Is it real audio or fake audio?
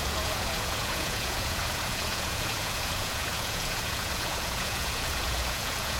fake